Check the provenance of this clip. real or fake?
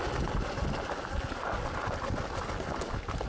real